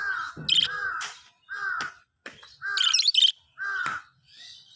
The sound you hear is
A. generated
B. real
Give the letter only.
B